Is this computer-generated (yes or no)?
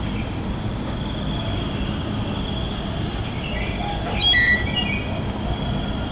no